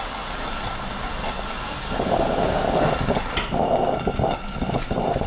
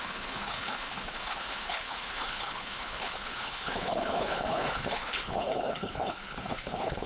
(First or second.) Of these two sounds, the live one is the first